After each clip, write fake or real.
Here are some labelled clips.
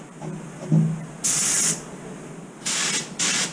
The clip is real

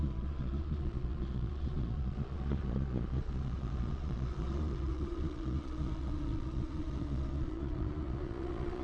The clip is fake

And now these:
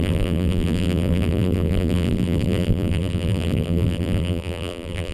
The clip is fake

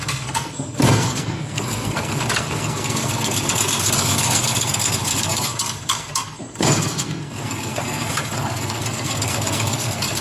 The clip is fake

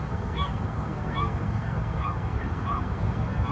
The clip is fake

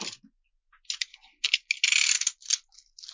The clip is real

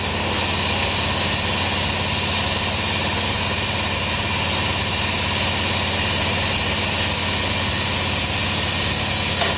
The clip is real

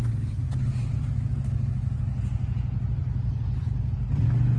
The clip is real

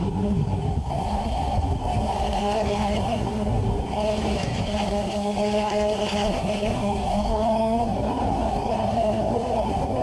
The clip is fake